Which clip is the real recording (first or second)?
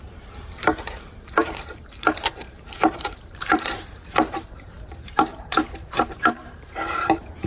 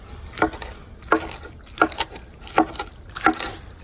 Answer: second